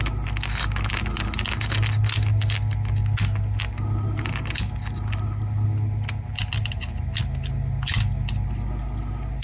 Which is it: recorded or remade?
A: recorded